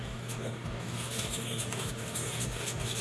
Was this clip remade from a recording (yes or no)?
yes